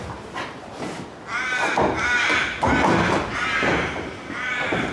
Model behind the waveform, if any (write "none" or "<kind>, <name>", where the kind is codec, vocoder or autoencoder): none